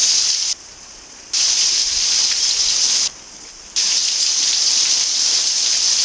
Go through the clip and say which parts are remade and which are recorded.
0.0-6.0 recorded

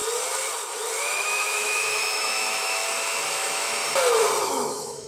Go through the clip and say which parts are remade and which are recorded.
0.0-1.0 recorded; 1.0-2.8 remade; 2.8-3.3 recorded; 3.3-3.8 remade; 3.8-4.4 recorded; 4.4-5.1 remade

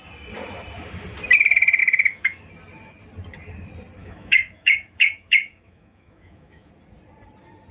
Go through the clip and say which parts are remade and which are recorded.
0.0-1.8 recorded; 1.8-2.4 remade; 2.4-4.0 recorded; 4.0-6.7 remade; 6.7-7.7 recorded

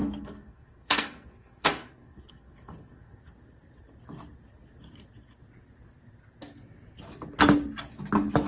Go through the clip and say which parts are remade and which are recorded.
0.0-3.2 remade; 3.2-8.5 recorded

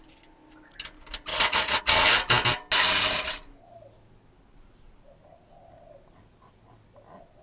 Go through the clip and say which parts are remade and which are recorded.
0.0-1.3 recorded; 1.3-1.8 remade; 1.8-7.4 recorded